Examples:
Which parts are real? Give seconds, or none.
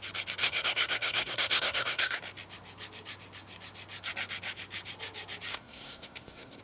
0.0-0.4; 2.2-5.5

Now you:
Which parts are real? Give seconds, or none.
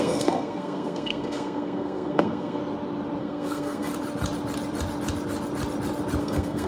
2.6-3.2; 3.9-6.2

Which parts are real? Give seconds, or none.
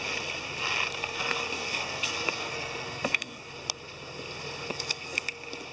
0.0-1.0; 3.5-4.7; 5.2-5.7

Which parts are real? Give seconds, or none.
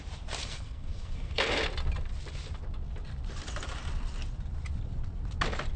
0.0-0.4; 1.5-5.8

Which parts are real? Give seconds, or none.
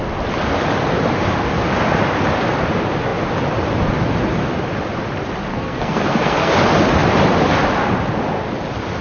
0.0-5.5; 6.5-9.0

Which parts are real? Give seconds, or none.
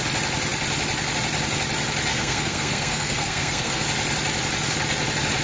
0.0-2.1; 3.8-5.4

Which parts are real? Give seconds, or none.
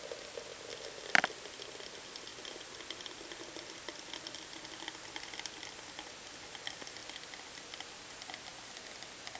0.0-9.4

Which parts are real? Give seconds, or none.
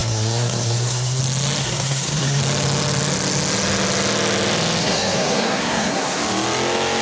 1.2-1.6; 2.4-4.8; 6.2-7.0